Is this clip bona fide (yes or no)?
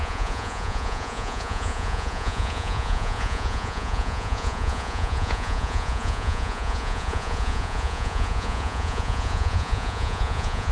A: no